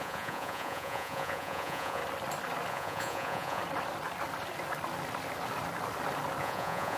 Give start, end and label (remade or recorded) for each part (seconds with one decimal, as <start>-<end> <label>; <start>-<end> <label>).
0.0-2.0 remade; 2.0-2.7 recorded; 2.7-3.6 remade; 3.6-6.4 recorded; 6.4-7.0 remade